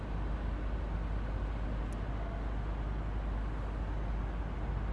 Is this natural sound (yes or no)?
yes